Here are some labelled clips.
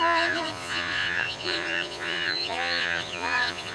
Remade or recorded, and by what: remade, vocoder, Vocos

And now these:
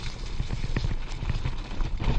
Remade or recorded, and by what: recorded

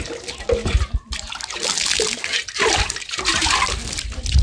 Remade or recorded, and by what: recorded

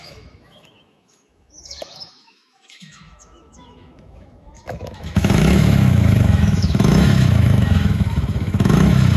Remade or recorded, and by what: remade, autoencoder, DAC-VAE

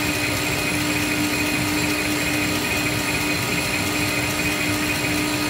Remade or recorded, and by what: recorded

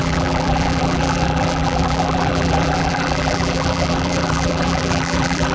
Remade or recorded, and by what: remade, vocoder, BigVGAN v2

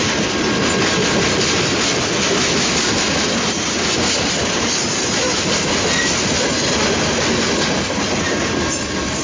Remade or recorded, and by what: recorded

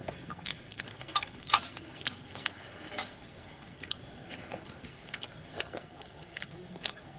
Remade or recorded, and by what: remade, codec, SNAC